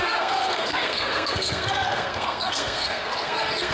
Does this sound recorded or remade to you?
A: remade